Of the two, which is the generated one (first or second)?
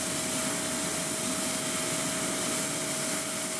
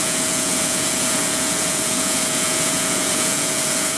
second